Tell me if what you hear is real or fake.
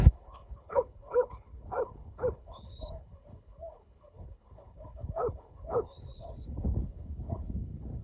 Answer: fake